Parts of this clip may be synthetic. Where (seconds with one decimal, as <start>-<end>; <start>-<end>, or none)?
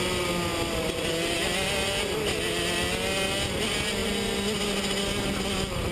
none